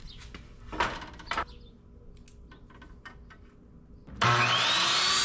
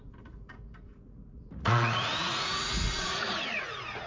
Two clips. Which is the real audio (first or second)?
first